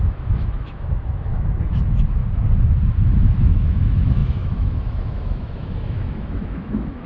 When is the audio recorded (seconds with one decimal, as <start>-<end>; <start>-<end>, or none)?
2.2-3.4